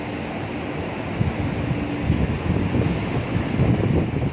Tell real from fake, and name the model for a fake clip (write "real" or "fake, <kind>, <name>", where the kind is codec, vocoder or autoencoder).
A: real